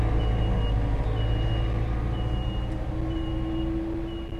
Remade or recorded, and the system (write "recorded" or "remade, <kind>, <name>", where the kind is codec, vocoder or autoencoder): recorded